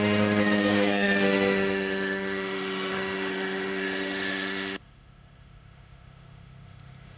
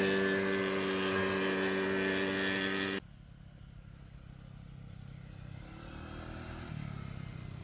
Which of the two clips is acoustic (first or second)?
second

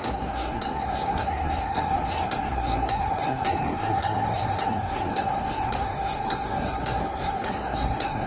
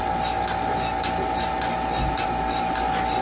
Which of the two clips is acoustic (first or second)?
second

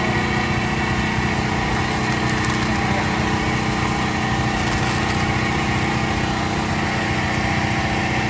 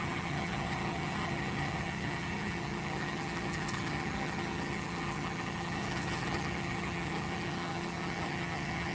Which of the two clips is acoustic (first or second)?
first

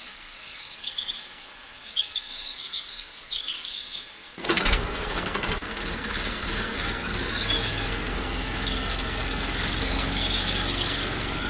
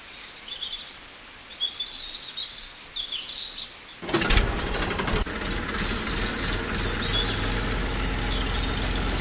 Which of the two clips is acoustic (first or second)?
second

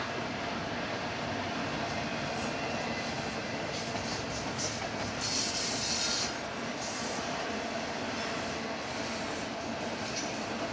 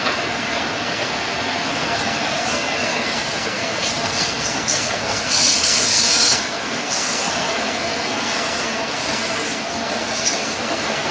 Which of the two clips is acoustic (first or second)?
first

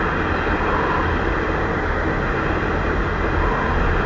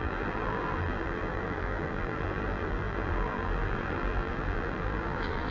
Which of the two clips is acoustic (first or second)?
first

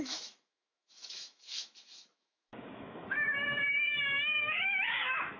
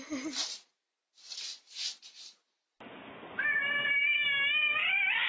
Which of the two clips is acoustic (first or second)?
second